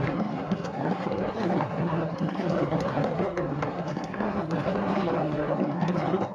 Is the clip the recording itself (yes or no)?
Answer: no